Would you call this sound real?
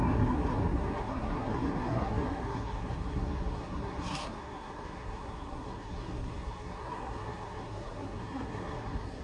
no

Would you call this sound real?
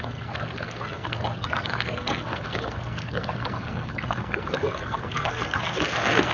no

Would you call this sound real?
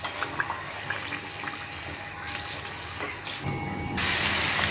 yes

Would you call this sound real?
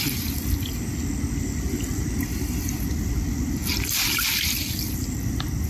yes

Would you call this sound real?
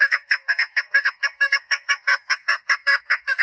no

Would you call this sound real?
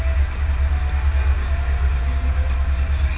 yes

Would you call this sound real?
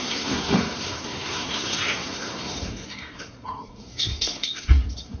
no